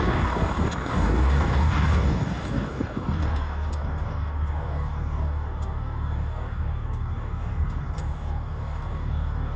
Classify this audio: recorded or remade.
remade